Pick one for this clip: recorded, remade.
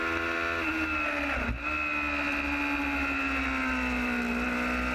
recorded